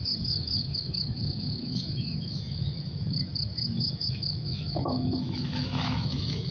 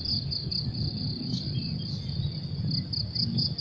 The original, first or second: second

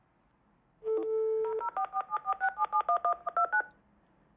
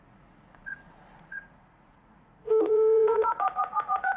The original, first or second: first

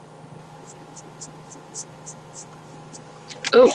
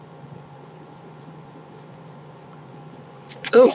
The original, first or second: first